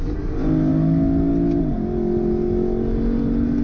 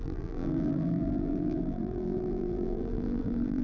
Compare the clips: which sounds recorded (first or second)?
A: first